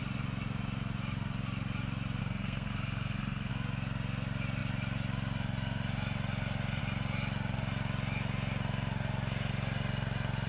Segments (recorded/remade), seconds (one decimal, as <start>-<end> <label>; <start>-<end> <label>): 0.0-2.2 recorded; 2.2-3.5 remade; 3.5-10.5 recorded